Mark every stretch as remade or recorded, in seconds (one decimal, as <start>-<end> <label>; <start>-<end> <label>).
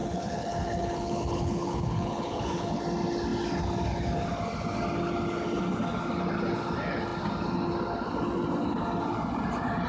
0.0-2.8 remade; 2.8-9.9 recorded